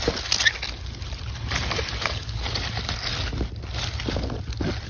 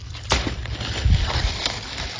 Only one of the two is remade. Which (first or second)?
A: second